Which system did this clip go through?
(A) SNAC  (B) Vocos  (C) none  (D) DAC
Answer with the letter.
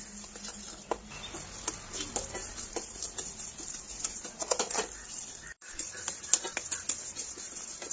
C